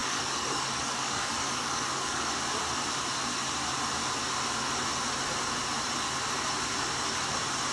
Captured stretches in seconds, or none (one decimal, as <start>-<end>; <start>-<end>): 2.3-7.7